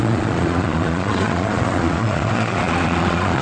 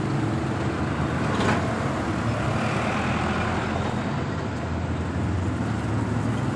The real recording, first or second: second